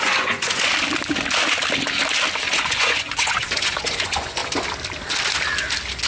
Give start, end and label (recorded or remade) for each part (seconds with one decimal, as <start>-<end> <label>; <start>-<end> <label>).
0.0-0.7 remade; 0.7-2.4 recorded; 2.4-4.4 remade; 4.4-6.1 recorded